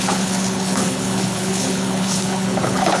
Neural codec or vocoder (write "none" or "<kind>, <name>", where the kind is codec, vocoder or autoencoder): codec, HILCodec